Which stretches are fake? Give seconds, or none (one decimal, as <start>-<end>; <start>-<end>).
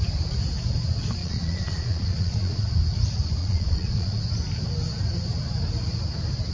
1.2-2.7; 3.4-4.2